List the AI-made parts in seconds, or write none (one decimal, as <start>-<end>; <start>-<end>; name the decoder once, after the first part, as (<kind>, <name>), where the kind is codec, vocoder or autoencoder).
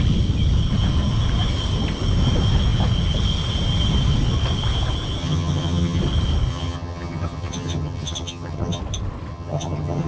5.2-6.0 (vocoder, HiFi-GAN); 6.5-8.8; 9.3-10.1